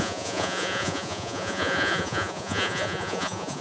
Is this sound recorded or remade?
remade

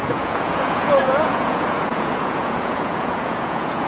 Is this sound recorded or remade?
remade